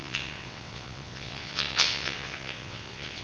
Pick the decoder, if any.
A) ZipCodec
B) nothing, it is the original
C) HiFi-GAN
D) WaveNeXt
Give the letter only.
D